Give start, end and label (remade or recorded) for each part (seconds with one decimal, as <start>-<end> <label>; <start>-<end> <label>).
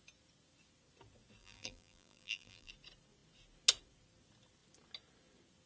0.0-1.4 recorded; 1.4-2.7 remade; 2.7-5.7 recorded